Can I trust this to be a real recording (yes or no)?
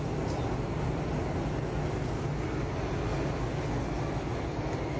yes